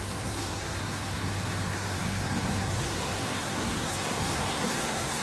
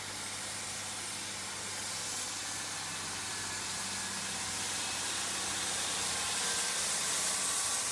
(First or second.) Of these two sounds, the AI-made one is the first